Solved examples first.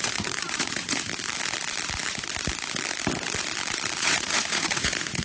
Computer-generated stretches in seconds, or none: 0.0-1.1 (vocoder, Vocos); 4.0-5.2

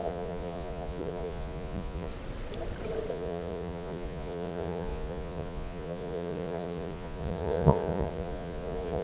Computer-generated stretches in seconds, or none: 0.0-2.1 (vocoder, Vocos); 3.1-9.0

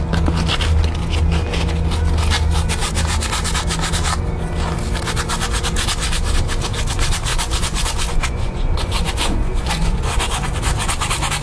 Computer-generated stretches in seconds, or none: 7.3-10.5 (vocoder, Vocos)

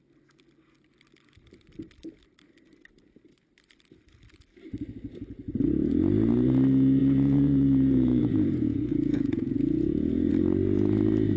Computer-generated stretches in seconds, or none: 7.0-10.3 (vocoder, Vocos)

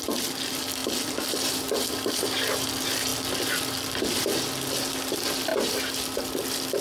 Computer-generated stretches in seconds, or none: none